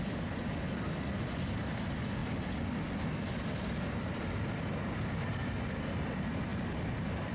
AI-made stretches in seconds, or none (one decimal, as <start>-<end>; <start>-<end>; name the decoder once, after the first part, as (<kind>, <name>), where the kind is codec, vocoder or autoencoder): 2.2-4.2 (vocoder, BigVGAN v2)